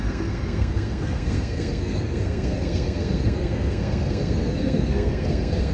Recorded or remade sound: remade